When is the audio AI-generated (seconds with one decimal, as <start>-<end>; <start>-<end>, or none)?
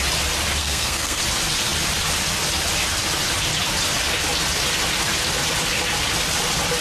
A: 0.6-1.2